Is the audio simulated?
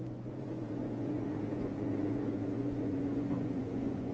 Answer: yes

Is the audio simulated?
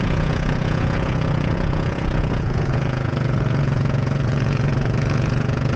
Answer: yes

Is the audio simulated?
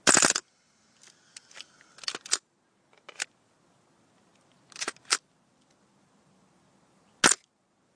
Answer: no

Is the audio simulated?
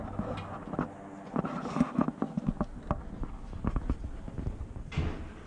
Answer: no